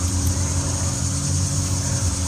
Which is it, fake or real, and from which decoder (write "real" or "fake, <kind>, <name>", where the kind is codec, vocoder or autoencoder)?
real